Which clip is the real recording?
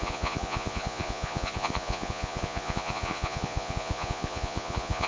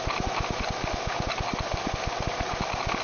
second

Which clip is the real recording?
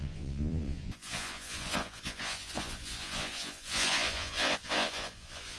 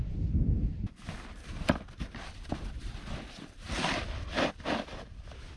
second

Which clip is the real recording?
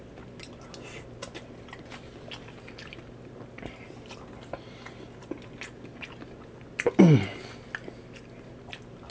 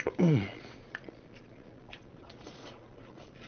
first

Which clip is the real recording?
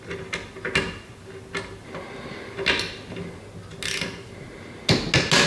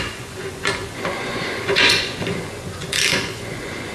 first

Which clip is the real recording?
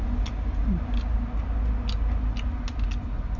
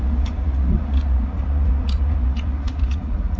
first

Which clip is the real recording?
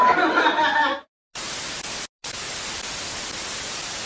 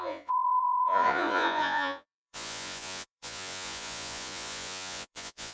first